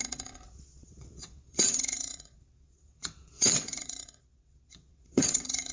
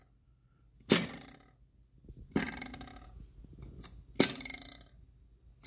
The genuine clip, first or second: second